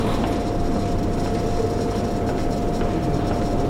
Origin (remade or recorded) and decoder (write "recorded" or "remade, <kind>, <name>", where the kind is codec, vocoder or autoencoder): recorded